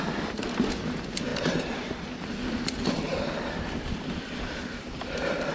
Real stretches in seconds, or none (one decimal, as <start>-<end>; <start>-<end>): 0.0-5.5